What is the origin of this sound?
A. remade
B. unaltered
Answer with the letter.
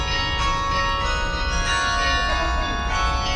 B